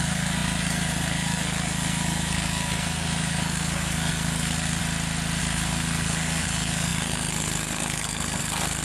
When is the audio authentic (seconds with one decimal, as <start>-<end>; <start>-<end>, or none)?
4.8-5.4